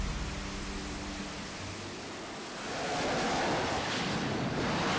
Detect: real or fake real